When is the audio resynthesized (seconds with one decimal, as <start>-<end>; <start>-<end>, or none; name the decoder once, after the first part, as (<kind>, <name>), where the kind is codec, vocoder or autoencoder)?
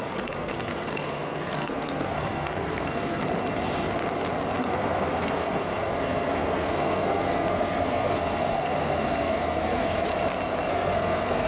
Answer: 0.0-3.2 (codec, SNAC); 4.6-10.1; 10.7-11.5